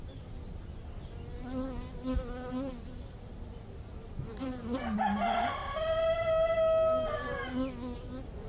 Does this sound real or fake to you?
real